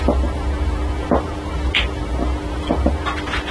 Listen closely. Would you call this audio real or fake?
real